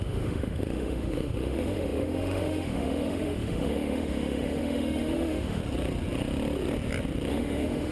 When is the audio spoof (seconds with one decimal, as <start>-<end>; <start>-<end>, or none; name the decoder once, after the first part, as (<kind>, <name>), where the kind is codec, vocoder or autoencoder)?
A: 0.0-5.6 (autoencoder, DAC-VAE); 7.3-7.9